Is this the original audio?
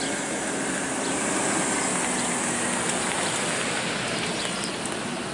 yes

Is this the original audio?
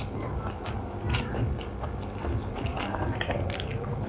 yes